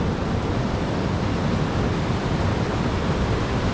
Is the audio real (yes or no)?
yes